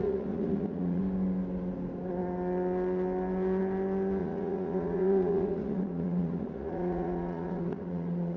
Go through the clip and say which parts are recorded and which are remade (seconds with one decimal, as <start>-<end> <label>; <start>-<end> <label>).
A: 0.0-1.0 remade; 1.0-4.2 recorded; 4.2-8.4 remade